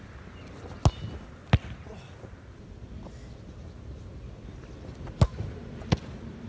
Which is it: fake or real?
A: real